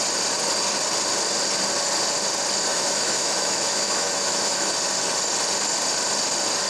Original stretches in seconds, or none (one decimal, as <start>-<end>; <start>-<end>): 0.0-2.7; 4.7-6.7